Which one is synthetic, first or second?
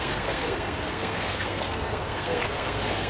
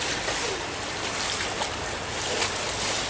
first